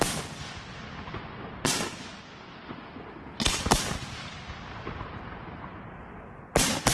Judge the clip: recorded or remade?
recorded